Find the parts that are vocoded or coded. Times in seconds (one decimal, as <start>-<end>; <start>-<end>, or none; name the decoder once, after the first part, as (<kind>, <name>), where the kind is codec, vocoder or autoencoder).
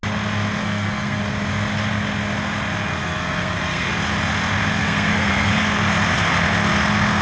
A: 0.6-1.2 (codec, SNAC); 3.0-3.9; 4.8-5.5